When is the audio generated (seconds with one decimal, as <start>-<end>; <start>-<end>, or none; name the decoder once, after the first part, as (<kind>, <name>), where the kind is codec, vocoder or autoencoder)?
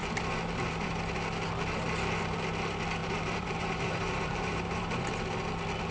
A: 0.0-0.9 (vocoder, BigVGAN v2); 3.0-5.0